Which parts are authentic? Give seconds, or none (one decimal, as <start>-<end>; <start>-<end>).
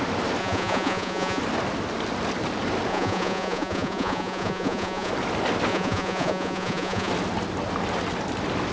0.0-0.4; 1.4-2.9; 5.1-5.7; 7.1-8.7